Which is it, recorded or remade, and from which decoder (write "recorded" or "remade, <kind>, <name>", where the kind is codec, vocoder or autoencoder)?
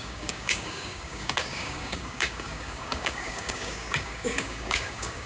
remade, codec, DAC